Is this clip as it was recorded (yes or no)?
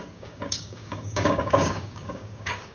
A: no